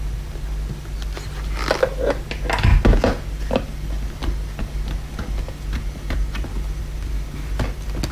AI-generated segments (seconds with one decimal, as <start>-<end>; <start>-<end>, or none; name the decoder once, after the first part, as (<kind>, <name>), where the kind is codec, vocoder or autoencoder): none